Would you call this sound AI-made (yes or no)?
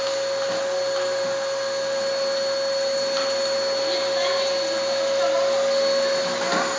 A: no